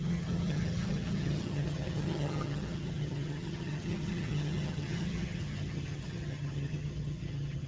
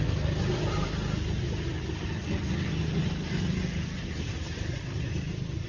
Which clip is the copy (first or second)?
first